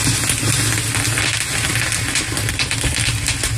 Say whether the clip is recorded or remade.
recorded